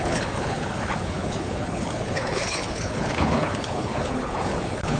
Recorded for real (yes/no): no